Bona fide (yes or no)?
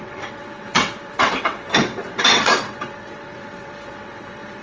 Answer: no